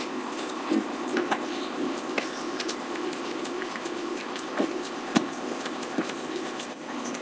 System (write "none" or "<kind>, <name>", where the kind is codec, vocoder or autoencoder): codec, ZipCodec